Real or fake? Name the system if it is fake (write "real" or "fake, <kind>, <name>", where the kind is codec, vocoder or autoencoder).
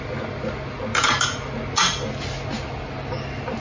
real